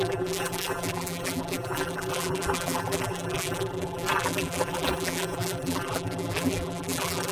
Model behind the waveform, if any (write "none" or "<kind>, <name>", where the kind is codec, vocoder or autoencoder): vocoder, BigVGAN v2